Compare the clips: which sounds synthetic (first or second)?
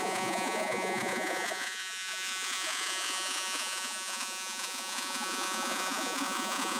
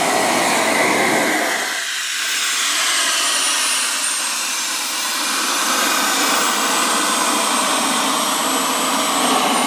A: first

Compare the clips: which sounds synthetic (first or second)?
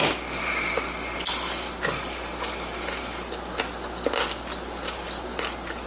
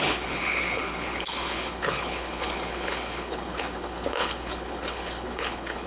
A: second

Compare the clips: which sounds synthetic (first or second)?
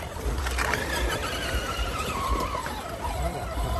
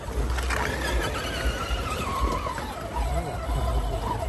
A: first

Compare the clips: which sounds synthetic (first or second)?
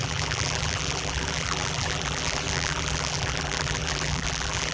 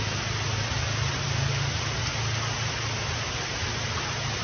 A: first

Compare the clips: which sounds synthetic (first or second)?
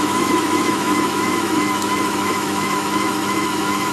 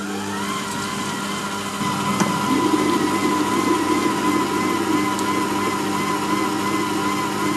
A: first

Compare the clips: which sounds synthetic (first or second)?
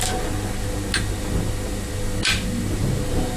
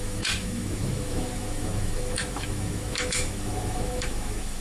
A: second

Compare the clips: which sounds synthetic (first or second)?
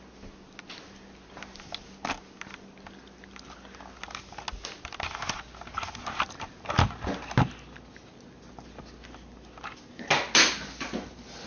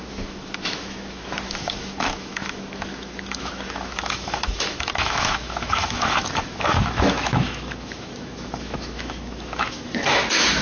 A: second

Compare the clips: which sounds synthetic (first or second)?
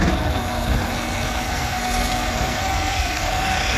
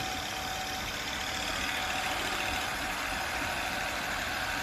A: first